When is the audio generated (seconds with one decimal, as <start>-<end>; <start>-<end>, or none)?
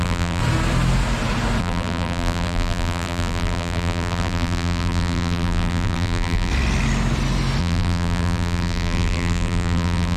0.0-0.4; 1.6-6.5; 7.6-10.2